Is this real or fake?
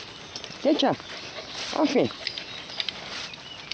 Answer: real